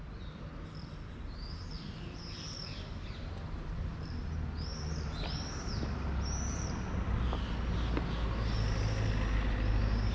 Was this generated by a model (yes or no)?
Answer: no